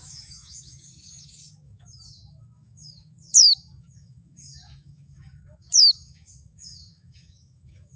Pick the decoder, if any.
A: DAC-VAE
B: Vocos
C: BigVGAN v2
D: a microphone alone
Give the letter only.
A